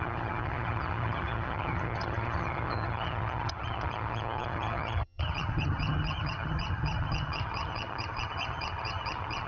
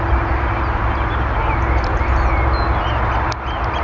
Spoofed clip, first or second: first